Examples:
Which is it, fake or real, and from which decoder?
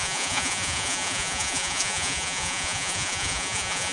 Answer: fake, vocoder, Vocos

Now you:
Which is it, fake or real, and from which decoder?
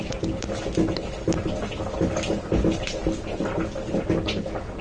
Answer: real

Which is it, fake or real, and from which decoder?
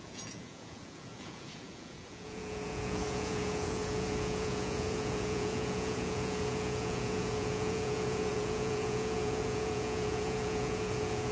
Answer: fake, vocoder, Vocos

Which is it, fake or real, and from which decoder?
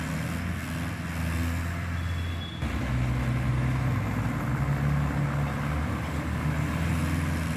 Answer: real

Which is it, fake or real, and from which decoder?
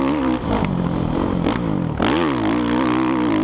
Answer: real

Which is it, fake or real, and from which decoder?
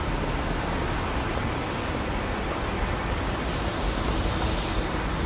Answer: real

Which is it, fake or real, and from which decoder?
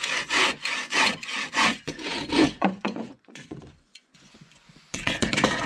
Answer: fake, vocoder, Vocos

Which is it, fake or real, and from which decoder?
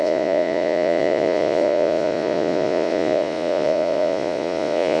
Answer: fake, vocoder, Vocos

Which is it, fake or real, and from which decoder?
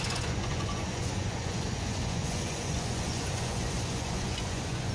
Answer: fake, vocoder, Vocos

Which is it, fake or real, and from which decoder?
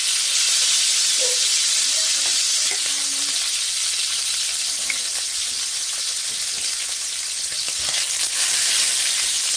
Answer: real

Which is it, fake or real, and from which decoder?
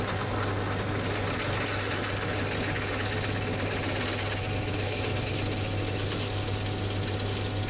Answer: real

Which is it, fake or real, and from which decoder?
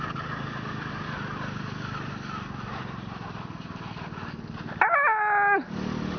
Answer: real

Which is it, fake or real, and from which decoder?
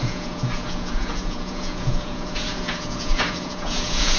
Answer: fake, vocoder, Vocos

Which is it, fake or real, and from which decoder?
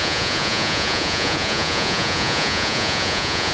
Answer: fake, vocoder, Vocos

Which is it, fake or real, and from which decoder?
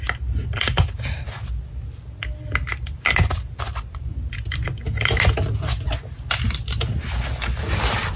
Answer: real